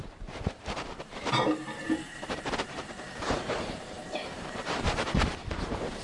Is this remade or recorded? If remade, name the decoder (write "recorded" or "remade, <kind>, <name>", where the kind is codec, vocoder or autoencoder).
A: remade, vocoder, BigVGAN v2